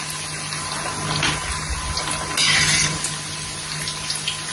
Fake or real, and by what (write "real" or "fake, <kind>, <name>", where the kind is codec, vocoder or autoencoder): real